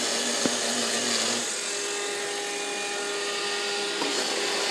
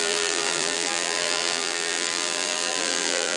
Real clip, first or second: first